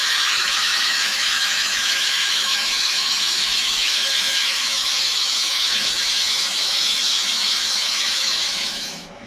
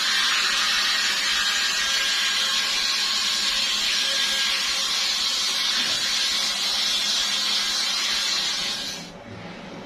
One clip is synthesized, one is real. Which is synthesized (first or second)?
first